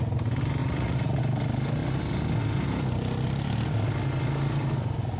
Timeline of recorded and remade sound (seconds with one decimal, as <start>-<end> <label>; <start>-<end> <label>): 0.0-0.6 recorded; 0.6-1.2 remade; 1.2-5.2 recorded